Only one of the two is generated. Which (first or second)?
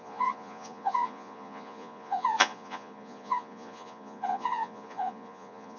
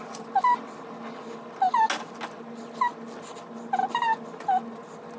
first